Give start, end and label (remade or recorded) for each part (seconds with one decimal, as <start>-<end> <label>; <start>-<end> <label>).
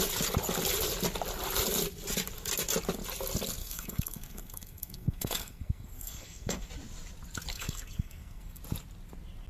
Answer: 0.0-3.6 recorded; 3.6-6.7 remade; 6.7-7.5 recorded; 7.5-8.6 remade; 8.6-9.5 recorded